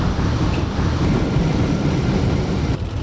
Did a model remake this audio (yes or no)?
yes